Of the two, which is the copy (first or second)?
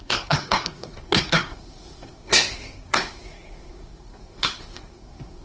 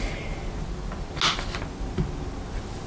first